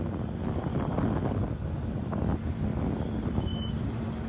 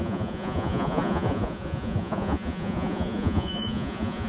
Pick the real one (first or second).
first